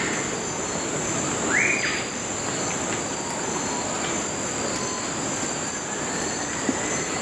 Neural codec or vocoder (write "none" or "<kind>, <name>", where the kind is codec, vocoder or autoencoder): none